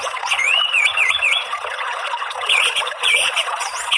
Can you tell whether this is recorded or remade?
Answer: remade